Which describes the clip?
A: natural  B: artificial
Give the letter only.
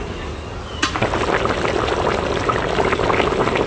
A